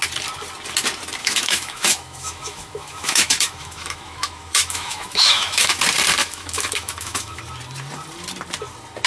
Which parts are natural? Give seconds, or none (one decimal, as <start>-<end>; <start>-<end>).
0.0-1.2; 5.8-6.2; 7.4-9.1